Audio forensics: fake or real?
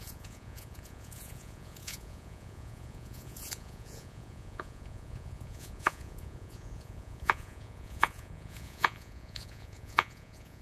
fake